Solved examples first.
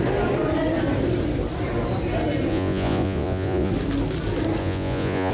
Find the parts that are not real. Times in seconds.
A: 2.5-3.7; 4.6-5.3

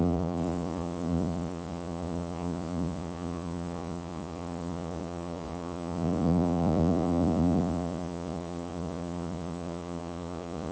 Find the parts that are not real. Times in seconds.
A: 0.0-10.7